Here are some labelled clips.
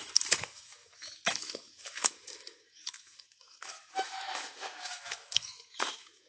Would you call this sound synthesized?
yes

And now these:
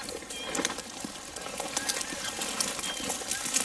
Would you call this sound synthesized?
no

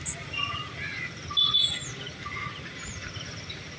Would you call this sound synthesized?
no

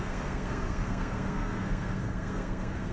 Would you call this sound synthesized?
yes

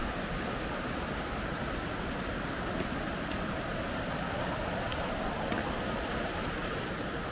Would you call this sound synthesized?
no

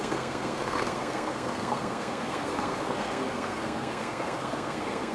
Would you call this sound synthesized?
yes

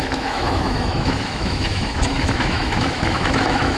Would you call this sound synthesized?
yes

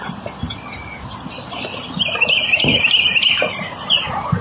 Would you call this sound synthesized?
no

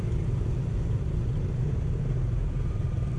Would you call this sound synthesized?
yes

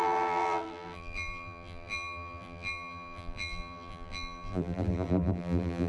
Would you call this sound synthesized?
yes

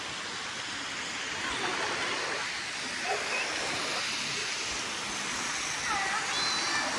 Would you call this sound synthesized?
no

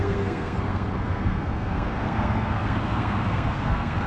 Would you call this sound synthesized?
yes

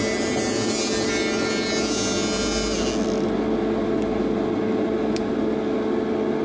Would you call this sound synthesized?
no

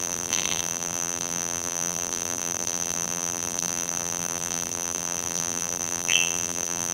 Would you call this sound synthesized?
yes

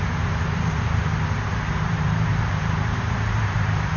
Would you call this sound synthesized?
yes